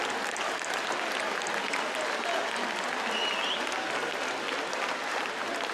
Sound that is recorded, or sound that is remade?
recorded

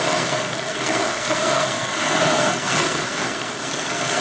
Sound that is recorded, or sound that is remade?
remade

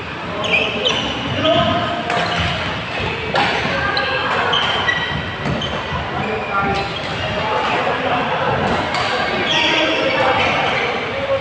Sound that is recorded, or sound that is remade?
recorded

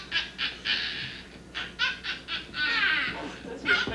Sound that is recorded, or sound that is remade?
recorded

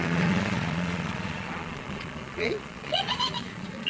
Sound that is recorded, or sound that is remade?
remade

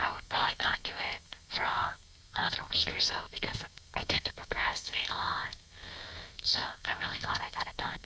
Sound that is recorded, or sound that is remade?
remade